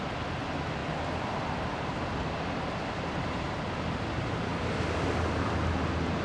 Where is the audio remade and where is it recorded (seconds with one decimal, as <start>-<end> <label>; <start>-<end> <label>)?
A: 0.0-0.8 recorded; 0.8-3.5 remade; 3.5-6.2 recorded